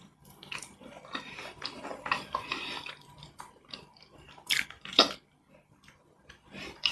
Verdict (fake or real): fake